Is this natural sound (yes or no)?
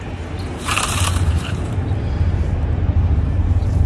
no